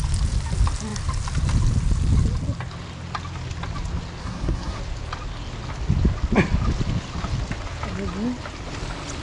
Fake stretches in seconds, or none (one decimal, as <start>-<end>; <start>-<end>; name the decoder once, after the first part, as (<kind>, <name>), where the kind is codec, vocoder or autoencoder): 4.2-4.8 (codec, SNAC)